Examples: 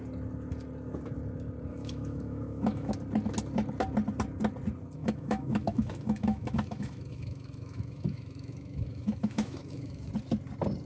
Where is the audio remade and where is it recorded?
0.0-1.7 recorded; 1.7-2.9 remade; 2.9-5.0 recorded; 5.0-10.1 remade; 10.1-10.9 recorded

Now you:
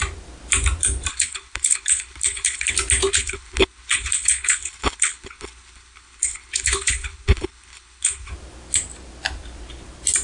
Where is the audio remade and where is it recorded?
0.0-1.1 recorded; 1.1-2.7 remade; 2.7-3.1 recorded; 3.1-8.3 remade; 8.3-10.2 recorded